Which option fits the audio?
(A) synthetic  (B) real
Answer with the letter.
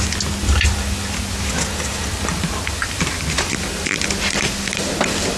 B